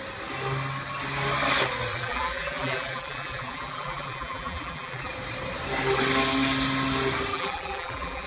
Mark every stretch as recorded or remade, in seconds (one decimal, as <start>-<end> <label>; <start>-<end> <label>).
0.0-1.9 recorded; 1.9-5.1 remade; 5.1-7.3 recorded; 7.3-8.3 remade